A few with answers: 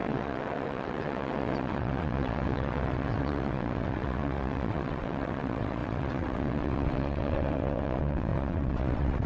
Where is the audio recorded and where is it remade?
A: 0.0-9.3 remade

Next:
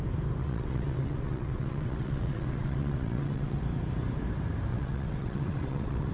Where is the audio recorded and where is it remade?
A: 0.0-0.4 recorded; 0.4-3.6 remade; 3.6-4.7 recorded; 4.7-6.1 remade

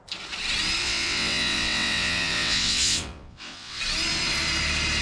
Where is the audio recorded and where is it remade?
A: 0.0-0.8 recorded; 0.8-3.8 remade; 3.8-5.0 recorded